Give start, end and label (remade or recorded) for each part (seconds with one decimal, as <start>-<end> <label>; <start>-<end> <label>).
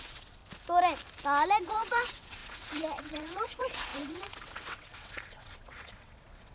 0.0-0.4 remade; 0.4-1.6 recorded; 1.6-6.5 remade